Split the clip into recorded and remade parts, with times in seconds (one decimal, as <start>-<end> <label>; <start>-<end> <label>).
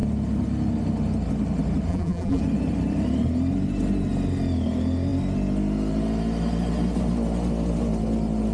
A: 0.0-1.9 recorded; 1.9-2.4 remade; 2.4-8.5 recorded